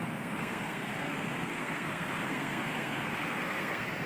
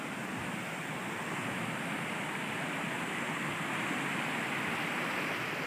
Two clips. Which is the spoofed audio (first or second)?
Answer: first